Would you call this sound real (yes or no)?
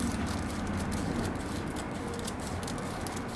yes